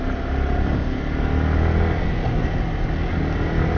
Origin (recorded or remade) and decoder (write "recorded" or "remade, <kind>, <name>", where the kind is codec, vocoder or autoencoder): recorded